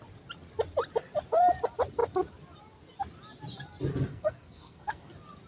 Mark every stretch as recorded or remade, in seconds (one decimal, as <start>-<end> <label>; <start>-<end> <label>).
0.0-4.1 recorded; 4.1-5.1 remade; 5.1-5.5 recorded